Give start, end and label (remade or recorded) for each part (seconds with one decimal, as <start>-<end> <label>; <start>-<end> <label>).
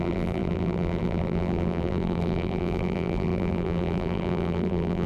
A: 0.0-5.1 remade